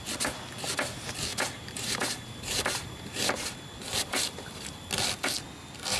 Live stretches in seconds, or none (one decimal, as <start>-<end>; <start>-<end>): 0.0-1.3; 4.9-6.0